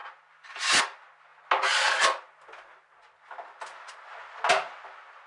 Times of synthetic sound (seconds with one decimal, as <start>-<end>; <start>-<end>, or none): none